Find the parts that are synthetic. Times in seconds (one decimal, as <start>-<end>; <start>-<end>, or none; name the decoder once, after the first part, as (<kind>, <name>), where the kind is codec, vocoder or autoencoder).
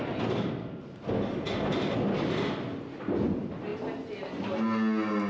none